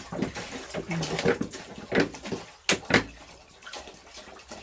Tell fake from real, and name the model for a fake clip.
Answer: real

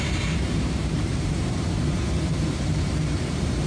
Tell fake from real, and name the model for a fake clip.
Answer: fake, vocoder, BigVGAN v2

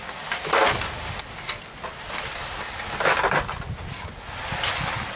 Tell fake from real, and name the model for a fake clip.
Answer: real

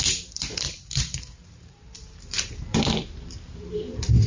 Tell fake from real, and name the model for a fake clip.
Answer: fake, vocoder, BigVGAN v2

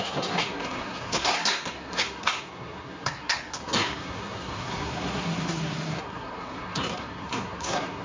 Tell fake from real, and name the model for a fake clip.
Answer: fake, codec, SNAC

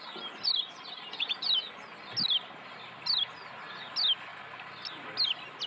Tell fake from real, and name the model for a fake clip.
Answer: real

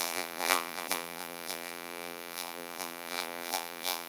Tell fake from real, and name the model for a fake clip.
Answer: fake, vocoder, BigVGAN v2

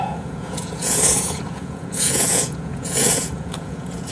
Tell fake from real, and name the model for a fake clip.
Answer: fake, vocoder, Vocos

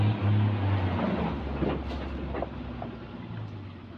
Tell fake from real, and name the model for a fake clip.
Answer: real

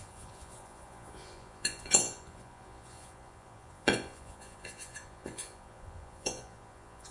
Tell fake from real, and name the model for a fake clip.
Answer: fake, vocoder, Vocos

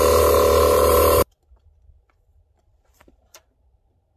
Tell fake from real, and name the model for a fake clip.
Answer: fake, vocoder, BigVGAN v2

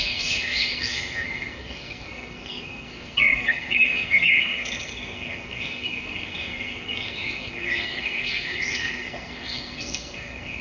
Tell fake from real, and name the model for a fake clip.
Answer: fake, codec, SNAC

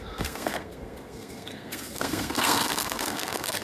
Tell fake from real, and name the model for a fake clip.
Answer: fake, codec, SNAC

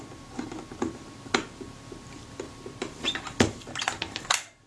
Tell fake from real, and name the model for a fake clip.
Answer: real